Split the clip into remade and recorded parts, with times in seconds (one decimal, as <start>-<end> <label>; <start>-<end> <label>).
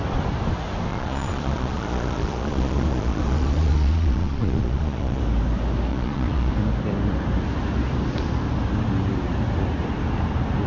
0.0-0.9 recorded; 0.9-5.2 remade; 5.2-5.9 recorded; 5.9-6.5 remade; 6.5-10.7 recorded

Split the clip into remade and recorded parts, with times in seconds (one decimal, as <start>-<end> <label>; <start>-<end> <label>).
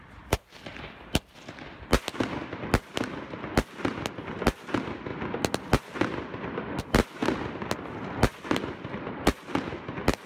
0.0-10.3 recorded